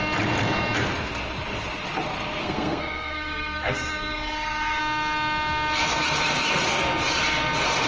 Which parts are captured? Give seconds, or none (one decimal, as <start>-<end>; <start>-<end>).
0.0-2.4; 4.8-7.9